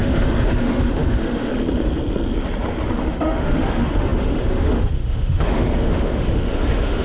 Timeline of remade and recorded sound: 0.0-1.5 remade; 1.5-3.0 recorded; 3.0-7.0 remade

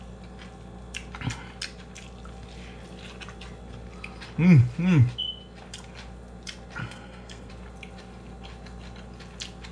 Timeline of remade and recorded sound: 0.0-6.8 recorded; 6.8-7.5 remade; 7.5-9.7 recorded

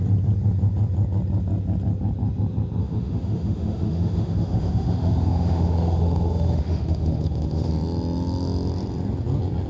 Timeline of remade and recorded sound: 0.0-2.8 recorded; 2.8-7.7 remade; 7.7-9.7 recorded

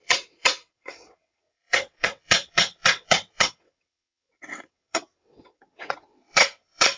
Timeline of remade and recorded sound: 0.0-7.0 remade